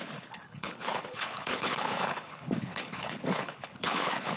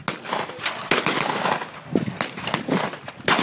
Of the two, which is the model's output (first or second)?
first